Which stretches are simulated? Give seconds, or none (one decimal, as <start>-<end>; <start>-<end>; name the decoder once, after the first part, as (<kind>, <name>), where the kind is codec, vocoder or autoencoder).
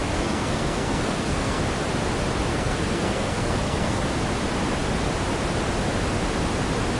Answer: 0.0-1.6 (codec, SNAC); 2.5-4.0